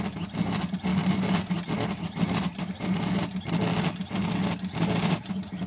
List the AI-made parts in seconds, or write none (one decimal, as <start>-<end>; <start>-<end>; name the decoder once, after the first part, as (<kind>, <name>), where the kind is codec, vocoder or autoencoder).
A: none